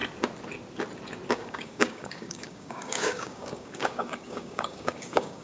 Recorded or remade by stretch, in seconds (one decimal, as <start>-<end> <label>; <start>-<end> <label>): 0.0-1.3 recorded; 1.3-5.4 remade